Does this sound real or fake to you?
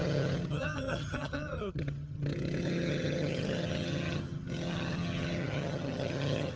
fake